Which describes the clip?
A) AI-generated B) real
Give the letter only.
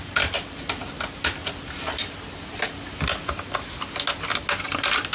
B